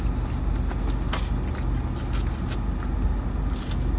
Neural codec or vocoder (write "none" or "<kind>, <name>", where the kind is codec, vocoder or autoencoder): none